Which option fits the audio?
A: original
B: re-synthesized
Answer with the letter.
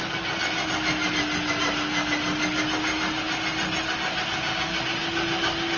A